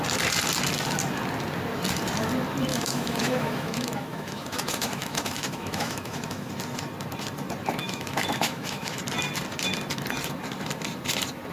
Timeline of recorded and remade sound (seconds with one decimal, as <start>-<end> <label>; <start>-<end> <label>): 0.0-2.7 recorded; 2.7-6.5 remade; 6.5-7.8 recorded; 7.8-9.0 remade; 9.0-11.5 recorded